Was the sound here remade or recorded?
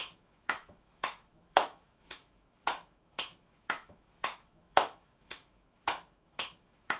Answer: remade